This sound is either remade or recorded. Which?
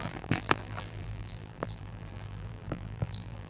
remade